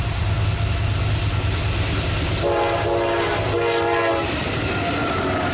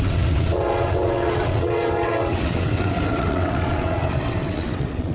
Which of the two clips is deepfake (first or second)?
second